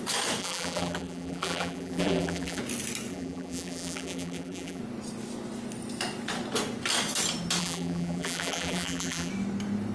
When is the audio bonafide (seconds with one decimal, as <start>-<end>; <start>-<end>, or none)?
0.0-0.4; 2.6-3.1; 4.8-7.6; 9.3-9.9